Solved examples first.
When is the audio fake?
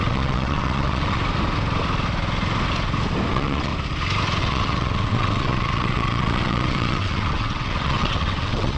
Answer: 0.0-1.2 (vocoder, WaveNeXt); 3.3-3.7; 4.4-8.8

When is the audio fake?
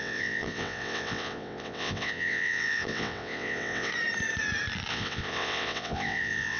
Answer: 0.0-3.9 (vocoder, WaveNeXt); 4.9-6.6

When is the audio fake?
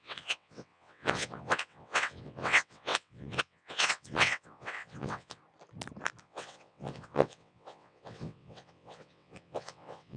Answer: 0.0-5.4 (vocoder, WaveNeXt); 6.2-10.2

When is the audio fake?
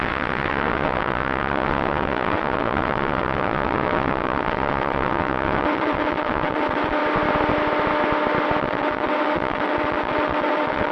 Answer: 0.0-7.0 (vocoder, WaveNeXt); 8.6-10.9